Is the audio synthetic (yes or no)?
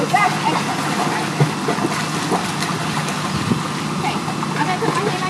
no